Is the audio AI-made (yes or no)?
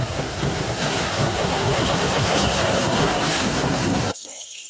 yes